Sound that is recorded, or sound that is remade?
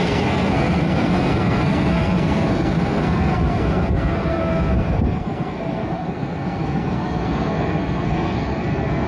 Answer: remade